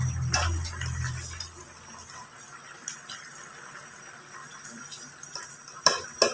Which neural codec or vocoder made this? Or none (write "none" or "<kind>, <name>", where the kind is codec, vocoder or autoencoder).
none